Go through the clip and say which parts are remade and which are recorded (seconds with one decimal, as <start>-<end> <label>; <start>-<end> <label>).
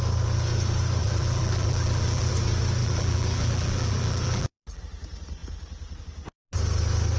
0.0-1.0 recorded; 1.0-2.3 remade; 2.3-2.8 recorded; 2.8-4.8 remade; 4.8-7.2 recorded